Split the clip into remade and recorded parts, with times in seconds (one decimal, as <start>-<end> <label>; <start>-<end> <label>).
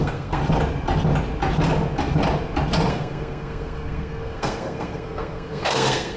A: 0.0-0.4 remade; 0.4-2.9 recorded; 2.9-6.2 remade